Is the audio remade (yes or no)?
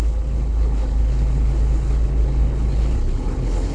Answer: yes